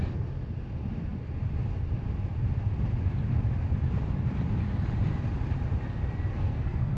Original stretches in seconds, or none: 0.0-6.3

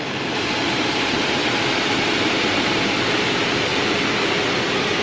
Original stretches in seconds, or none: 1.4-2.3; 3.7-5.0

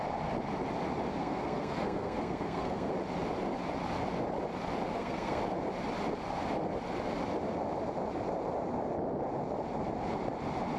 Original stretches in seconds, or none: 0.0-1.2; 2.9-4.9; 5.4-10.8

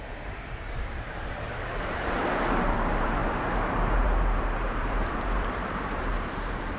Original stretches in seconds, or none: none

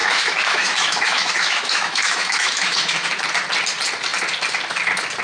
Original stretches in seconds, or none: 3.1-5.2

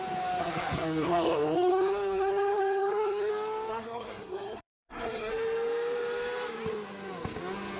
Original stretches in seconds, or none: 0.0-0.4; 3.3-3.7; 5.3-7.8

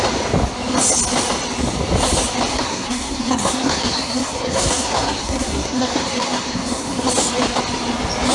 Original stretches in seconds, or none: 0.0-2.5; 7.1-8.3

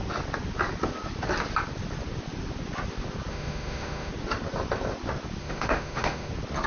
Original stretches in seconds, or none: 0.0-3.3; 4.1-5.4; 6.3-6.7